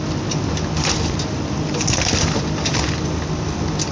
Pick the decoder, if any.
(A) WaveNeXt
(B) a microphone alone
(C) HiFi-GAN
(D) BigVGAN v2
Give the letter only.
B